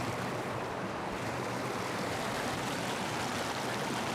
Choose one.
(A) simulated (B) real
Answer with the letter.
B